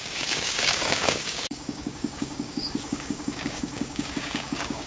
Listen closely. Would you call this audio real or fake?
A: fake